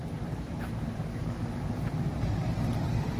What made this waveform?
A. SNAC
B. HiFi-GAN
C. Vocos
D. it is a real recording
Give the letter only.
D